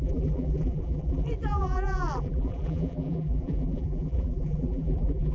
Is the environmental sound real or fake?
fake